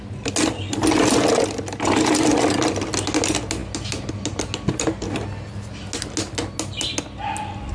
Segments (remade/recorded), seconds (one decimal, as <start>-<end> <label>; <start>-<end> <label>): 0.0-7.7 recorded